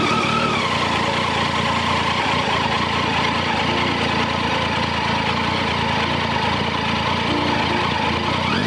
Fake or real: real